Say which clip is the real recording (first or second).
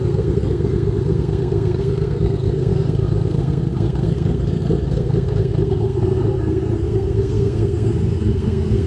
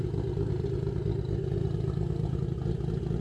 second